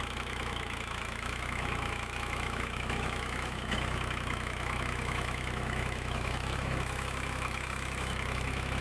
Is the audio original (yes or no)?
no